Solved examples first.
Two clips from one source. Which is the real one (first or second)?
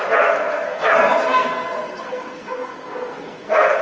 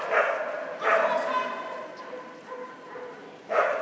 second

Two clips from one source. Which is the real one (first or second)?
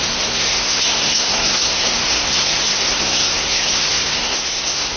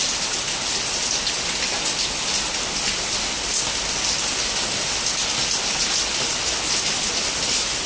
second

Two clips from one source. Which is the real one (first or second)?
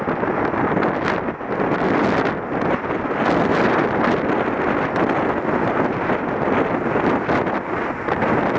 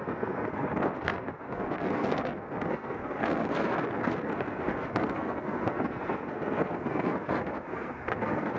first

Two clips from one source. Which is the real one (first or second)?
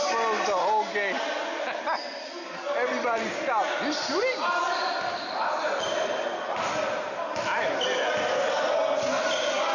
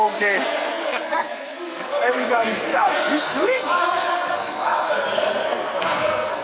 first